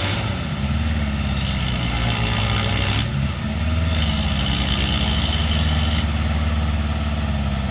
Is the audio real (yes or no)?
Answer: yes